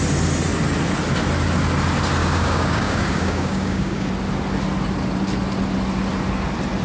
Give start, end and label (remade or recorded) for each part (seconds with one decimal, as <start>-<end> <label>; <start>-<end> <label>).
0.0-2.2 recorded; 2.2-4.1 remade; 4.1-6.8 recorded